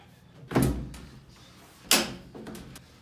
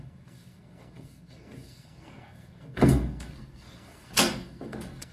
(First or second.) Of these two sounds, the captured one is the first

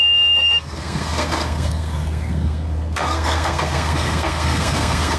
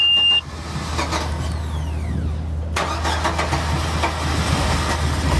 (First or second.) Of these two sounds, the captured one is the second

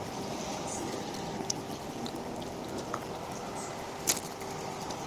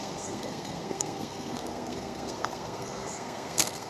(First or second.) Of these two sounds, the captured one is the first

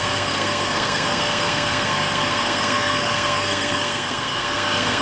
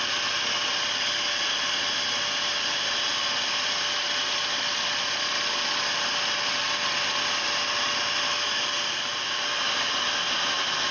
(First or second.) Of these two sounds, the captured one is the second